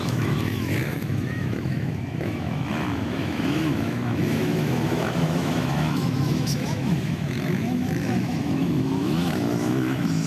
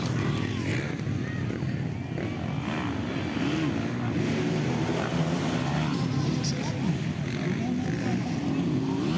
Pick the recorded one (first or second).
second